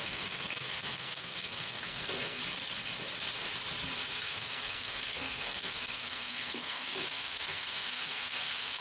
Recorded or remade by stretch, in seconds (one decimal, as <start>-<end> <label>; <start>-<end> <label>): 0.0-2.4 remade; 2.4-4.1 recorded; 4.1-8.8 remade